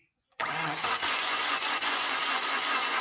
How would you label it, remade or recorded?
remade